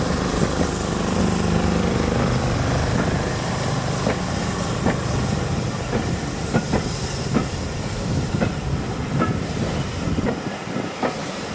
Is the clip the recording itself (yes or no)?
no